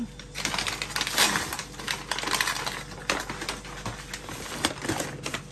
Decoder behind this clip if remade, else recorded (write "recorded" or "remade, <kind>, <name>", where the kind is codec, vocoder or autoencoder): recorded